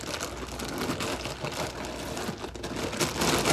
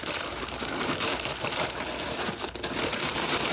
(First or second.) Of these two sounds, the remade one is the second